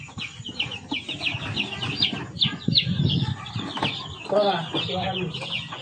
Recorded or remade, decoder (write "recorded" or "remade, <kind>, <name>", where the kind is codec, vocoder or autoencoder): recorded